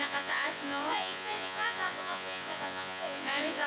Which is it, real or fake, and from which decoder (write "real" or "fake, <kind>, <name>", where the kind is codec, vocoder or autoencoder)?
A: fake, vocoder, Vocos